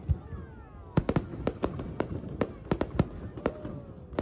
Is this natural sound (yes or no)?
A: yes